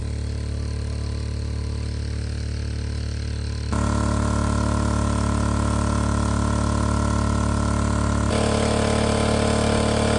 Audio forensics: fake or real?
real